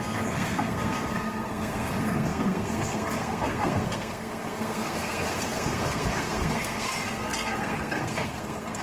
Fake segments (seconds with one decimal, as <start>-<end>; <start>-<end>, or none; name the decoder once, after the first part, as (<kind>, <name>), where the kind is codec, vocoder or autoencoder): 0.0-8.8 (codec, SNAC)